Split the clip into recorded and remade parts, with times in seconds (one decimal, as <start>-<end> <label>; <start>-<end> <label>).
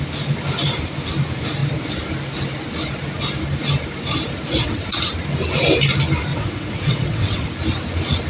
0.0-4.6 recorded; 4.6-5.1 remade; 5.1-6.3 recorded; 6.3-7.5 remade; 7.5-8.3 recorded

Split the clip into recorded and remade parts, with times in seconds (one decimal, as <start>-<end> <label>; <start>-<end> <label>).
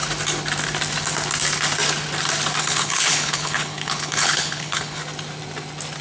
0.0-2.6 recorded; 2.6-5.0 remade; 5.0-6.0 recorded